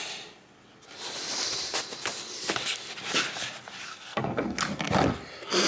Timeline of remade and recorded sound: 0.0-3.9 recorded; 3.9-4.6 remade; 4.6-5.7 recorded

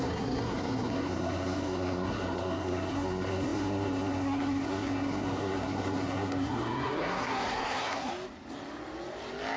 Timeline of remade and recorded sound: 0.0-8.1 remade; 8.1-9.6 recorded

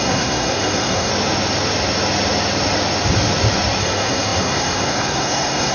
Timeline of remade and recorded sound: 0.0-1.1 remade; 1.1-3.8 recorded; 3.8-5.7 remade

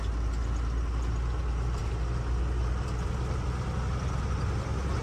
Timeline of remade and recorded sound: 0.0-5.0 recorded

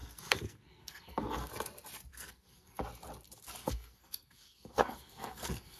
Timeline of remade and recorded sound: 0.0-1.5 remade; 1.5-2.1 recorded; 2.1-2.8 remade; 2.8-3.6 recorded; 3.6-5.8 remade

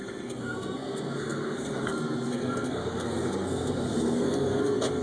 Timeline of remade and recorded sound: 0.0-5.0 remade

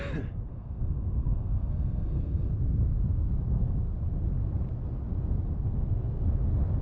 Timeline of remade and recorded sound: 0.0-0.5 recorded; 0.5-2.5 remade; 2.5-6.8 recorded